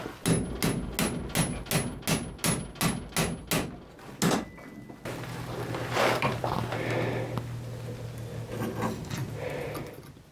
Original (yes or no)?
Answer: yes